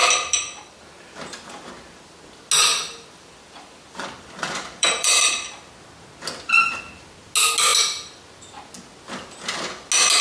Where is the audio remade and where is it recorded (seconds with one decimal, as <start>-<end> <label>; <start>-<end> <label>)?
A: 0.0-0.8 remade; 0.8-2.7 recorded; 2.7-5.3 remade; 5.3-10.2 recorded